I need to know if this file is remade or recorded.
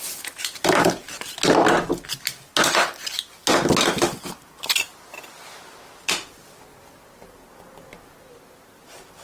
recorded